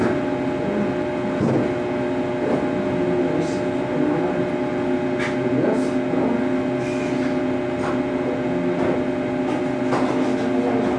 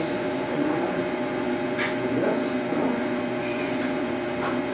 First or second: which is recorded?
first